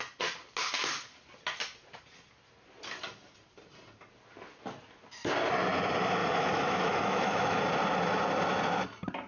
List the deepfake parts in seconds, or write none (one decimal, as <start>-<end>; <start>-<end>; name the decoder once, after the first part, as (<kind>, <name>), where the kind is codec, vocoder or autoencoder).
6.2-7.6 (autoencoder, DAC-VAE)